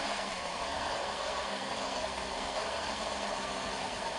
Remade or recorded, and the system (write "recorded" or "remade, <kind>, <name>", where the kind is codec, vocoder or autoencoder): remade, codec, SNAC